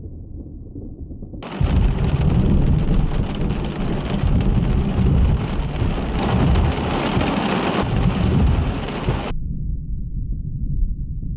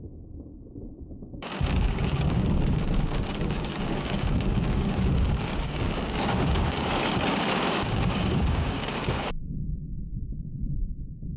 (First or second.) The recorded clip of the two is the first